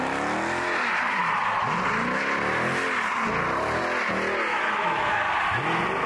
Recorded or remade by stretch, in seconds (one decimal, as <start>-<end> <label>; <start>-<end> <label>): 0.0-4.5 recorded; 4.5-5.2 remade; 5.2-6.1 recorded